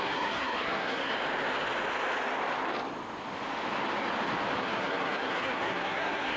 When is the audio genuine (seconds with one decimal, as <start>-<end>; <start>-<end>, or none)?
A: 1.1-4.6